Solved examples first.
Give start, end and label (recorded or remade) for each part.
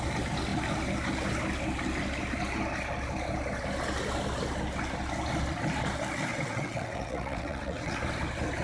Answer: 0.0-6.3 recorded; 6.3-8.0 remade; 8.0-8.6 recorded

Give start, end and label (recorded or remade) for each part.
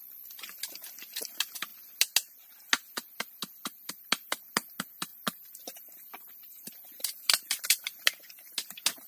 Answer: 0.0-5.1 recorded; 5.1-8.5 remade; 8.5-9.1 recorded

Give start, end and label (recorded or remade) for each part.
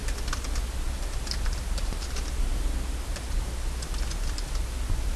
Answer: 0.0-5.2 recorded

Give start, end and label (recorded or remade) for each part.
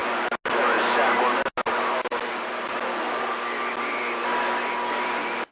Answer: 0.0-5.5 recorded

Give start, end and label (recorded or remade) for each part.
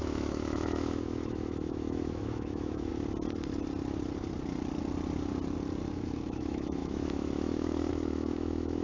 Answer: 0.0-2.9 remade; 2.9-5.9 recorded; 5.9-8.8 remade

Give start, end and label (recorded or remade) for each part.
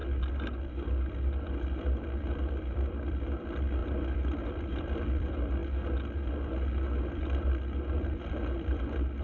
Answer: 0.0-2.3 recorded; 2.3-5.6 remade; 5.6-7.2 recorded; 7.2-9.2 remade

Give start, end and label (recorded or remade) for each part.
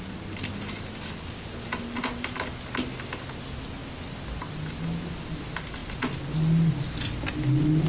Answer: 0.0-7.9 recorded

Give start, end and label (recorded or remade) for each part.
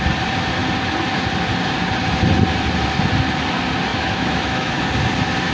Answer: 0.0-3.9 recorded; 3.9-4.8 remade; 4.8-5.5 recorded